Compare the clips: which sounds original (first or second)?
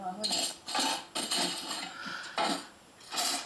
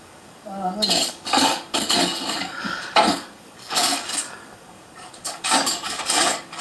first